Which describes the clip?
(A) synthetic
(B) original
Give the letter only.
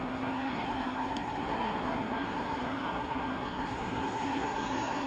A